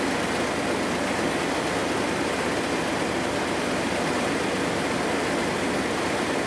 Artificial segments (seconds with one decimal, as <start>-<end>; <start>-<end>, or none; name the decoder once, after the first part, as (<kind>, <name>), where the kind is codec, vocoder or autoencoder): none